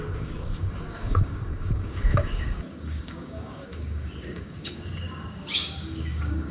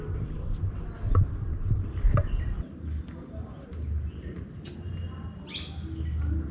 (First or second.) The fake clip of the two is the first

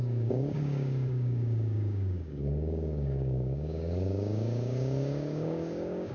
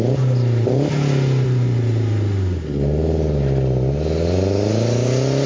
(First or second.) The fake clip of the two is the first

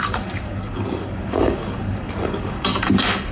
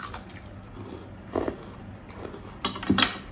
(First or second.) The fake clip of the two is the first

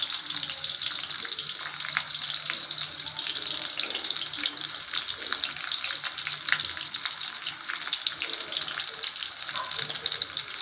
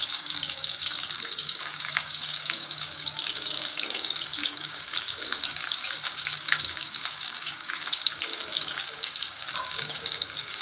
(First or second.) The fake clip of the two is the second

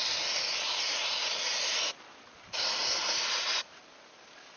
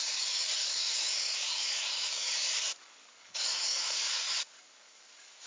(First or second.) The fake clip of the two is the second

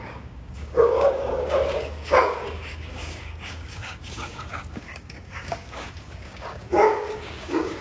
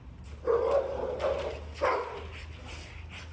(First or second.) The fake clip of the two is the first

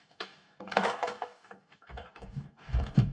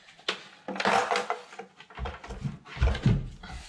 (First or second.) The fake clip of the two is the first